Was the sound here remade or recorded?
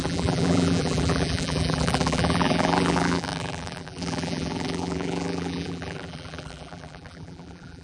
remade